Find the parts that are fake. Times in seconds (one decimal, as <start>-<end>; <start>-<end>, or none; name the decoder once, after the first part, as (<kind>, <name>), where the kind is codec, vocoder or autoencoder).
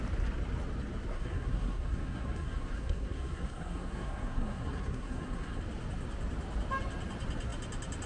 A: 1.1-5.6 (codec, SNAC)